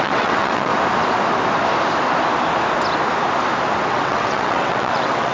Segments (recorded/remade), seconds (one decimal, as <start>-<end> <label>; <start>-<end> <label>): 0.0-0.7 remade; 0.7-3.9 recorded; 3.9-5.3 remade